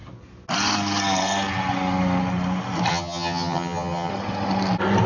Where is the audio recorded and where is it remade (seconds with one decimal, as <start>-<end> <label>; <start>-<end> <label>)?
0.0-2.9 recorded; 2.9-4.1 remade; 4.1-5.1 recorded